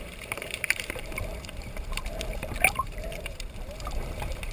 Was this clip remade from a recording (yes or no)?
yes